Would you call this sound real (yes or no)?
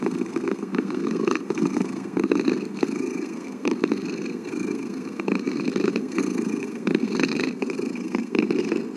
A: no